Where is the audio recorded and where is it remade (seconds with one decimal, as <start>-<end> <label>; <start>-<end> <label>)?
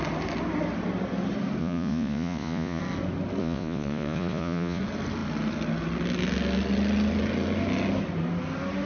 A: 0.0-1.6 recorded; 1.6-2.8 remade; 2.8-3.4 recorded; 3.4-4.8 remade; 4.8-8.9 recorded